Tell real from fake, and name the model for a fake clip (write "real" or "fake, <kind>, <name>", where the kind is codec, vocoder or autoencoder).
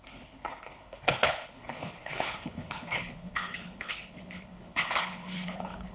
fake, codec, HILCodec